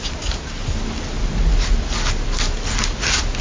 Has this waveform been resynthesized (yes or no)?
no